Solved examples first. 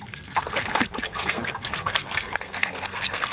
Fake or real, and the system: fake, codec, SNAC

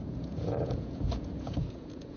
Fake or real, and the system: fake, vocoder, Vocos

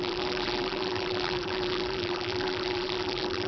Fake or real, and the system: fake, vocoder, BigVGAN v2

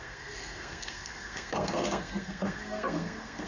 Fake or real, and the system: fake, codec, SNAC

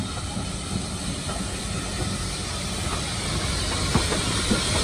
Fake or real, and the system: real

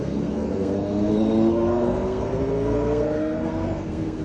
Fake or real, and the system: fake, codec, SNAC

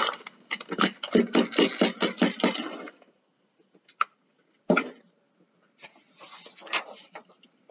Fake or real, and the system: real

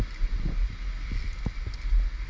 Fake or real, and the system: real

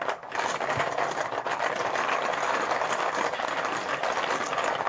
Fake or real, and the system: real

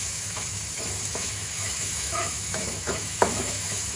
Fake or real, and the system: fake, autoencoder, DAC-VAE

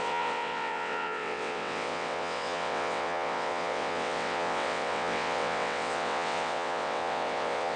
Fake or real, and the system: fake, vocoder, WaveNeXt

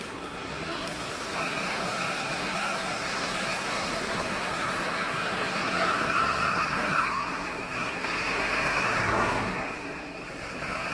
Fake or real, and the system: fake, codec, SNAC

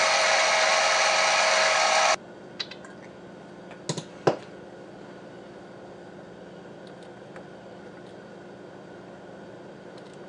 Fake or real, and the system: real